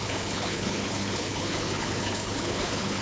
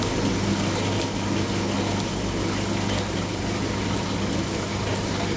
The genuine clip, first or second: second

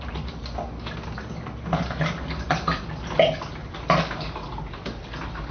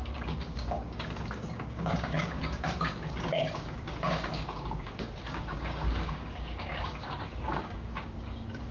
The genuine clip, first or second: first